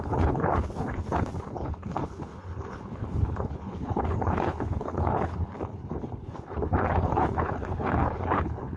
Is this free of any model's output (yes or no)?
no